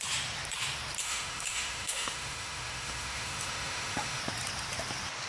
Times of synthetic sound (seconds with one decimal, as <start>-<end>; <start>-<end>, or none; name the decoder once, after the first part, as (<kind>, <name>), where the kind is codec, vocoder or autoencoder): 1.0-4.2 (autoencoder, DAC-VAE)